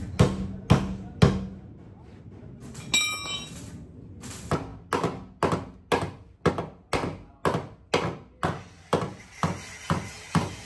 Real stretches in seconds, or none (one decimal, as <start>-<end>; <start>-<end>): 0.0-10.7